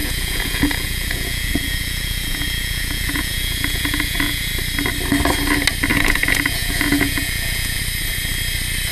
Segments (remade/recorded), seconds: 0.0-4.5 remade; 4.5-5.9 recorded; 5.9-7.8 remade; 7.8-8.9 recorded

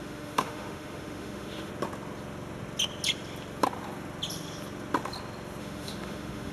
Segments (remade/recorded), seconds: 0.0-1.7 remade; 1.7-5.6 recorded; 5.6-6.5 remade

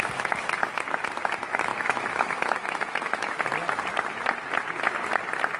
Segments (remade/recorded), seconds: 0.0-1.7 recorded; 1.7-3.4 remade; 3.4-5.6 recorded

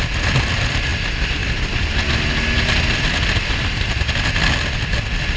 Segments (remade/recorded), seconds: 0.0-5.4 recorded